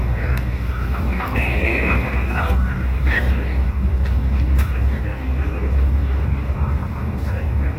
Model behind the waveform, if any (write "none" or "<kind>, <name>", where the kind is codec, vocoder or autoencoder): codec, DAC